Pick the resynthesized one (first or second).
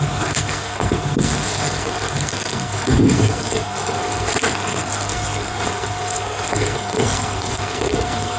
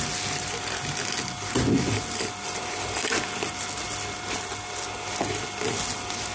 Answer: first